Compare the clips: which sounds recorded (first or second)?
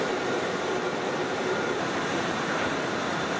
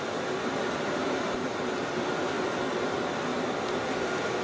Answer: second